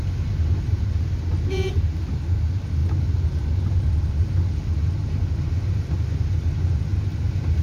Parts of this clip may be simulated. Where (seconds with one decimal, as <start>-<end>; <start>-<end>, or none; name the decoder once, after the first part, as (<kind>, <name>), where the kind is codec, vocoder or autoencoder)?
none